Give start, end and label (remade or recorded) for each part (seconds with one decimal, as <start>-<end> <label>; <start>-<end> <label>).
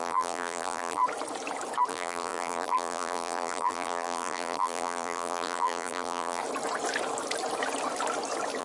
0.0-1.0 remade; 1.0-1.9 recorded; 1.9-6.4 remade; 6.4-8.6 recorded